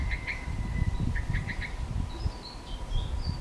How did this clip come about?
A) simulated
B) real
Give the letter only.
B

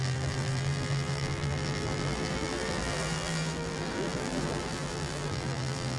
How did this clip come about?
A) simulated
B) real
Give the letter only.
A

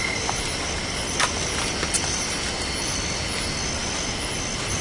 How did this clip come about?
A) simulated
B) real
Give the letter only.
B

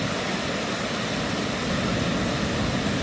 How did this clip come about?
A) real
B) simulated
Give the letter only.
A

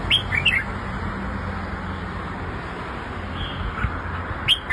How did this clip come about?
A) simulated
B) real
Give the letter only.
B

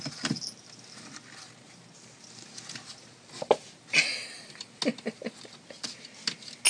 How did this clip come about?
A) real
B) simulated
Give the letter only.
A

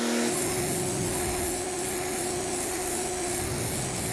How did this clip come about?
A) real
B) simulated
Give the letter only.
A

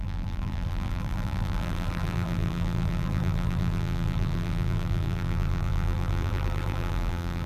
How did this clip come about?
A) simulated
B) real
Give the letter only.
A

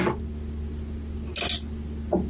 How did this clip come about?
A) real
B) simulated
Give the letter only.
A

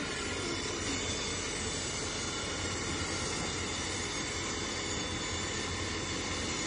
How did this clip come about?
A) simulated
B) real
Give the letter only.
B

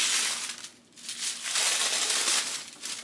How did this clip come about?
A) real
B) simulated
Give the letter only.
A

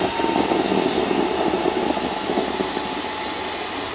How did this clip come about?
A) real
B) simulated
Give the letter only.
A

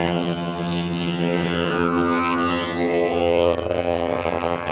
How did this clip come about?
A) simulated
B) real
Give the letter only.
A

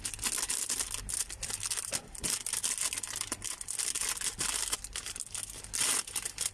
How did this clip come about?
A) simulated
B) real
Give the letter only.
B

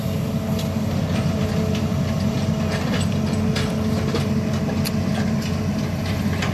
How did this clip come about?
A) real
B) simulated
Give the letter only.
A